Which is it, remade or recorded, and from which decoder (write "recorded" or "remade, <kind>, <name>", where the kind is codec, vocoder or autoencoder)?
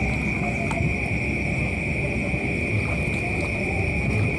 recorded